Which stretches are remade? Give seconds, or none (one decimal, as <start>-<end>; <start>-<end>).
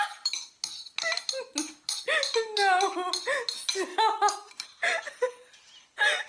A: 3.9-4.5